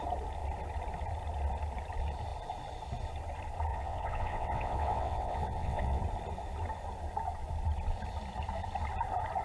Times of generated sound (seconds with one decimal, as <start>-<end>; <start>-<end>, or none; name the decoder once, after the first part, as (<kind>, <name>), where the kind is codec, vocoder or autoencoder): 3.7-6.0 (vocoder, WaveNeXt)